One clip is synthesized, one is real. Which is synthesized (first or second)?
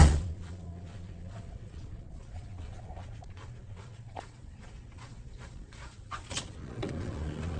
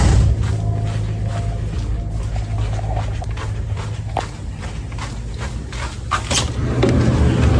first